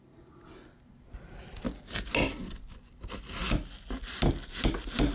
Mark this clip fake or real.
real